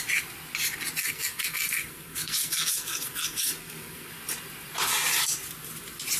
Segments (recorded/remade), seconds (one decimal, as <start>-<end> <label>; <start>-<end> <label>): 0.0-1.0 recorded; 1.0-4.1 remade; 4.1-6.2 recorded